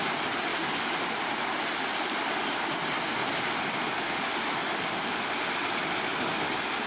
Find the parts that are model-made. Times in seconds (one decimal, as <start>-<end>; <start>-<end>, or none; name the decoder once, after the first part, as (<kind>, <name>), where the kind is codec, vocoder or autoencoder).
none